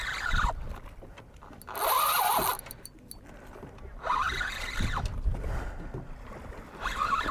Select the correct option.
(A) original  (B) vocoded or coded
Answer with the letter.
A